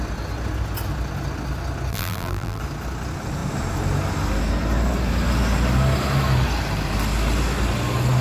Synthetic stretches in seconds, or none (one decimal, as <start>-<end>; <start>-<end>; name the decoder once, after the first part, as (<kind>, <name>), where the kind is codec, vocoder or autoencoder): 1.9-2.6 (vocoder, BigVGAN v2)